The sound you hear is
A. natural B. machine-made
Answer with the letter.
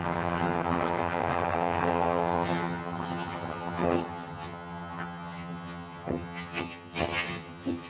B